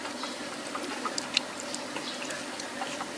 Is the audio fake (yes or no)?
no